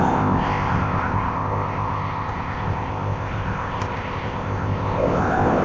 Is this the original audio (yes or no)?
no